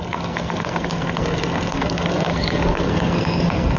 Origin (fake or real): fake